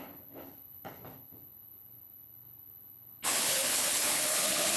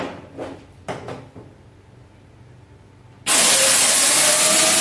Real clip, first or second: second